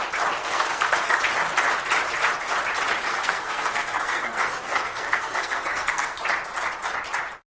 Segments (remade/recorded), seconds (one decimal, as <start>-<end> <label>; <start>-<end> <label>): 0.0-0.4 recorded; 0.4-1.2 remade; 1.2-3.1 recorded; 3.1-6.2 remade; 6.2-7.6 recorded